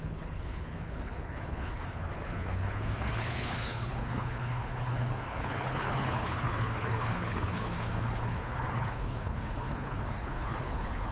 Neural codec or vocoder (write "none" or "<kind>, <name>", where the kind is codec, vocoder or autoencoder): codec, HILCodec